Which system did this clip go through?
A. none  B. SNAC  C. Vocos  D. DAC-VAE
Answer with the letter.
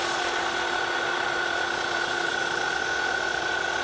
C